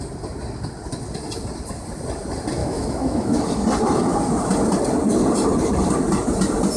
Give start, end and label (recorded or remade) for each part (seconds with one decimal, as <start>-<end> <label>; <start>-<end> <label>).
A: 0.0-2.6 recorded; 2.6-3.4 remade; 3.4-6.8 recorded